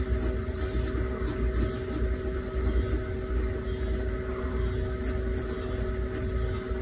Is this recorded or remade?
recorded